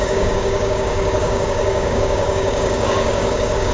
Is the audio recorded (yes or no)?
no